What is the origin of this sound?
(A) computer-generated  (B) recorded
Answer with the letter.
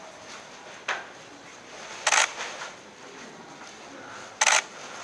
B